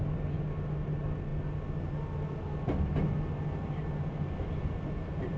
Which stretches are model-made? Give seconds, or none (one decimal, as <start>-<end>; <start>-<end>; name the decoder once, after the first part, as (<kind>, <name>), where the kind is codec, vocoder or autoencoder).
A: none